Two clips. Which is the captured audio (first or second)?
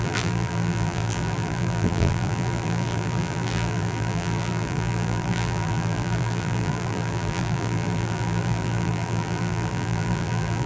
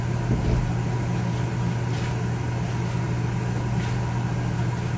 second